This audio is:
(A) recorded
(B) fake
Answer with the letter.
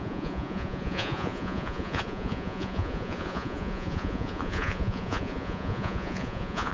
B